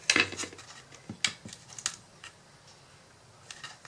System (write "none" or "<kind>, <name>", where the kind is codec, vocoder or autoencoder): none